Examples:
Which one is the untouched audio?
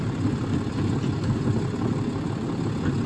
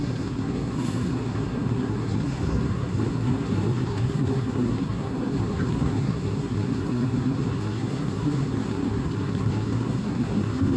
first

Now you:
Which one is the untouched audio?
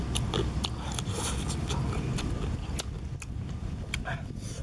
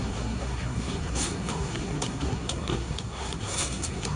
first